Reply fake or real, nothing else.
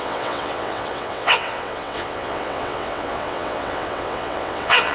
fake